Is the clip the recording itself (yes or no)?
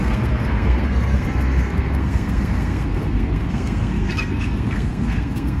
no